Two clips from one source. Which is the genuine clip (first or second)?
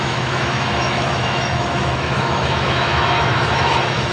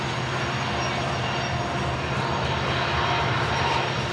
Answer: second